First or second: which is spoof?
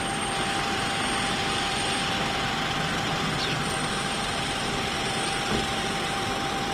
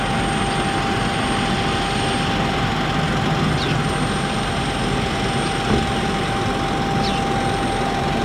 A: first